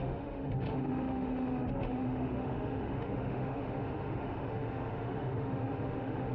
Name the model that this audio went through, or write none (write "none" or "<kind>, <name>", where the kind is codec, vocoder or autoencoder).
autoencoder, DAC-VAE